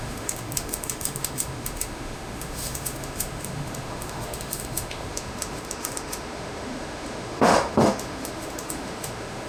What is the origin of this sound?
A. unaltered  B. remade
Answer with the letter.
B